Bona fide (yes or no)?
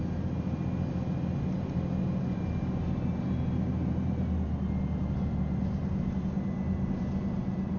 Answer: yes